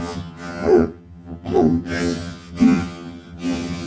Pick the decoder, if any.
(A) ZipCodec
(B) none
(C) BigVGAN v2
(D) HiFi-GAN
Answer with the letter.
D